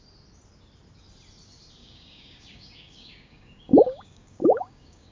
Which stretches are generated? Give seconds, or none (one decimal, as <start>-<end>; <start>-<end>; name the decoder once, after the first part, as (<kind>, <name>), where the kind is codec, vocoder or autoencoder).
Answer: 1.8-5.1 (codec, DAC)